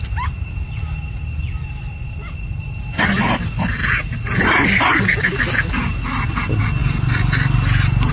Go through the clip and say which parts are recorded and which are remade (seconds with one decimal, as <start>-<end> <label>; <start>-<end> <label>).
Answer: 0.0-8.1 recorded